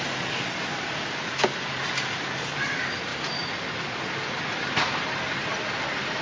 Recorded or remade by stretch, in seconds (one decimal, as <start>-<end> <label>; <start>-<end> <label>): 0.0-6.2 recorded